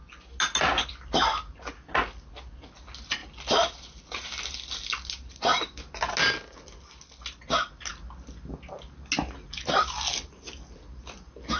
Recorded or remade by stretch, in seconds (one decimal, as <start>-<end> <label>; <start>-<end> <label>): 0.0-11.6 recorded